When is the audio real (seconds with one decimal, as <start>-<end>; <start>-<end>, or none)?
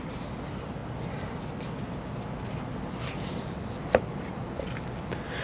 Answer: 0.0-5.4